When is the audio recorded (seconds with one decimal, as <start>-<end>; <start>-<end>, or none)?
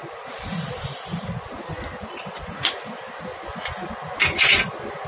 3.1-5.1